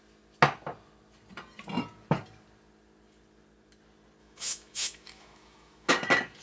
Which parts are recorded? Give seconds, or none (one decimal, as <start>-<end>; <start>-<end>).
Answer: 0.0-4.2; 5.9-6.4